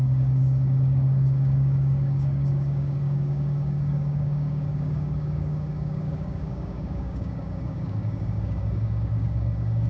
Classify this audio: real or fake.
fake